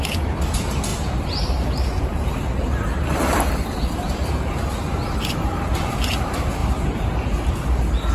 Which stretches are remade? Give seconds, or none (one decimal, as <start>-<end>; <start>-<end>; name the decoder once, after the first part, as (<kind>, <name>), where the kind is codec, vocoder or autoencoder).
0.0-8.1 (vocoder, BigVGAN v2)